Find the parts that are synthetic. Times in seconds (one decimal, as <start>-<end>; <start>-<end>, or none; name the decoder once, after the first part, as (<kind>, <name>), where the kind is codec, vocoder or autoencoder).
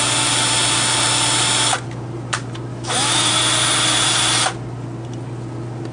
2.7-3.3 (autoencoder, DAC-VAE)